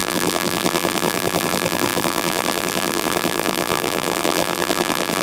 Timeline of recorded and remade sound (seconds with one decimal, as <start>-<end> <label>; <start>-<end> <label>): 0.0-5.2 remade